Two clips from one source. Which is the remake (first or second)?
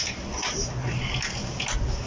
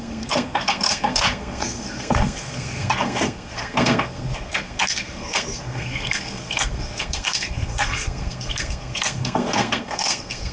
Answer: second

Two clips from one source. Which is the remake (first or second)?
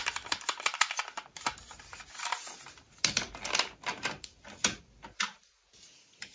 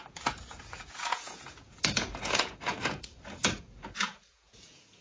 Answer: second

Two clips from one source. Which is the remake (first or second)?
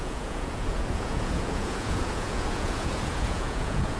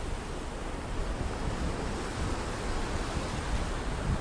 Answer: first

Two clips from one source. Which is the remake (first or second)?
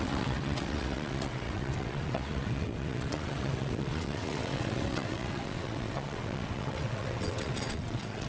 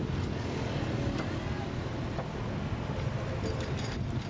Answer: first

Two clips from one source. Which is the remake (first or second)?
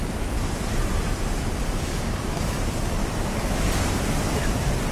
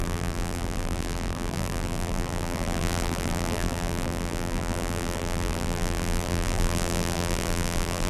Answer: second